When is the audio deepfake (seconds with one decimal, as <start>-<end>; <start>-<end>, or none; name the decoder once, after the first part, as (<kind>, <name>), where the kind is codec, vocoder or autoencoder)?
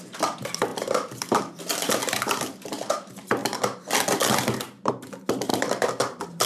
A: 0.7-2.9 (vocoder, BigVGAN v2); 5.5-6.5